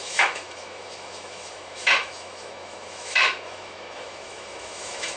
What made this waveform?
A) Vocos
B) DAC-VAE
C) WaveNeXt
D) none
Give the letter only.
B